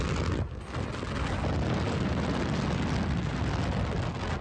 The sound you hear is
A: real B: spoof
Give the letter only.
A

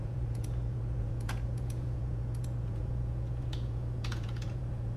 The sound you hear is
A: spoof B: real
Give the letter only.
A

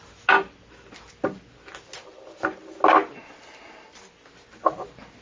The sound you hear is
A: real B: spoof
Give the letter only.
A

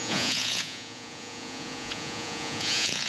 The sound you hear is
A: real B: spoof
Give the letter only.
B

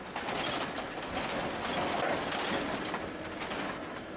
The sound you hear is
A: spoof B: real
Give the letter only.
B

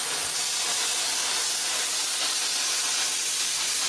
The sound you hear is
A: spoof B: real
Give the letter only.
B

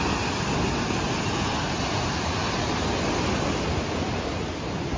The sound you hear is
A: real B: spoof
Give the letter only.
A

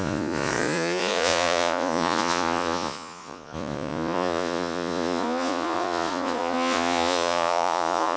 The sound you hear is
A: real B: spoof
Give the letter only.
B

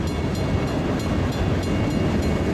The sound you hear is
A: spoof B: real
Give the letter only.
B